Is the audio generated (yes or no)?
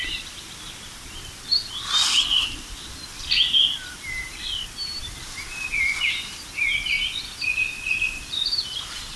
no